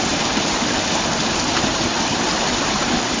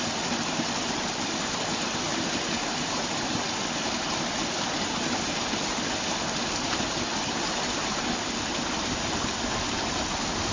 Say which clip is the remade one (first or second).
first